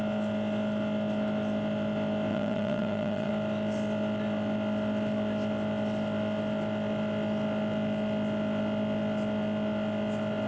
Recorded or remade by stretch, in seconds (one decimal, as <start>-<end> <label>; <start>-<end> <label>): 0.0-2.3 recorded; 2.3-3.3 remade; 3.3-10.5 recorded